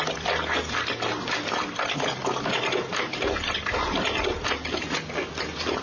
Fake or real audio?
real